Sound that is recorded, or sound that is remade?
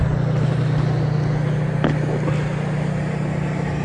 recorded